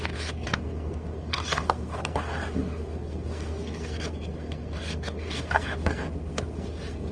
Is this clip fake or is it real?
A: fake